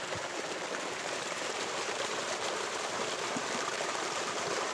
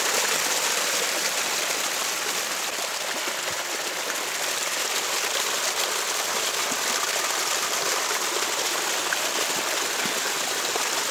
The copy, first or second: first